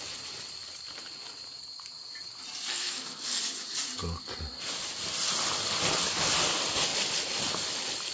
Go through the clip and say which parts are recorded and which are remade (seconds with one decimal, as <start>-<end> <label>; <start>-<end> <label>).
0.0-2.7 recorded; 2.7-3.4 remade; 3.4-8.1 recorded